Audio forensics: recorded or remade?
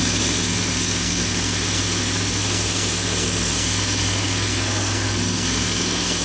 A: remade